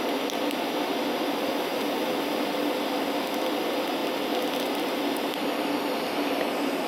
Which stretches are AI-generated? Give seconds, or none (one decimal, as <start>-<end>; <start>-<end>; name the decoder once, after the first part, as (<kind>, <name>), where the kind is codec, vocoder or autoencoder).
none